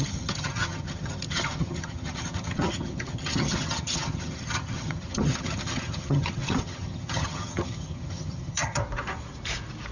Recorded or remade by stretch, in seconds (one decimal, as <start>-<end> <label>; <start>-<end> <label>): 0.0-8.8 remade; 8.8-9.9 recorded